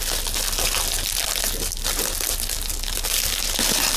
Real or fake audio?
real